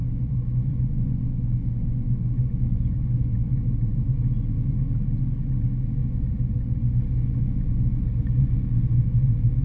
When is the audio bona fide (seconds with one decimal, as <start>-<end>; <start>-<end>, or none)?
3.5-6.0; 9.2-9.6